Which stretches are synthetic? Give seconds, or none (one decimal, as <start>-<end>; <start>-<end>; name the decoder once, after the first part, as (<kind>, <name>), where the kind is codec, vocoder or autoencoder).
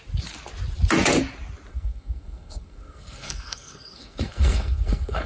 1.7-5.3 (codec, SNAC)